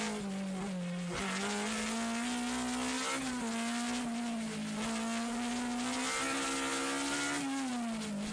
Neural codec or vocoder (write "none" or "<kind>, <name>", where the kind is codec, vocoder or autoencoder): none